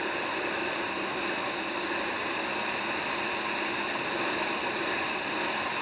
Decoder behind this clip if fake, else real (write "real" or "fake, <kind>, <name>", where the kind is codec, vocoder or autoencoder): real